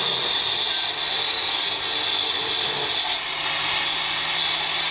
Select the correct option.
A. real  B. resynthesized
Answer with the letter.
A